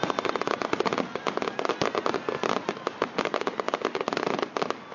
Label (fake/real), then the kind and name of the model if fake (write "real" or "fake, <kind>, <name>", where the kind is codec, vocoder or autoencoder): real